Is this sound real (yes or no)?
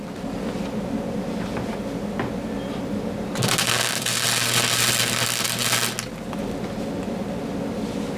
yes